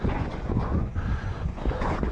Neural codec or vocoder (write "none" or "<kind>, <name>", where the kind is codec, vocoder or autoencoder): vocoder, Vocos